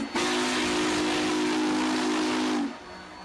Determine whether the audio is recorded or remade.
recorded